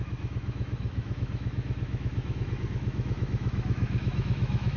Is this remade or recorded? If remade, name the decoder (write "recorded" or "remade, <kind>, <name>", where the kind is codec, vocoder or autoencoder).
remade, autoencoder, DAC-VAE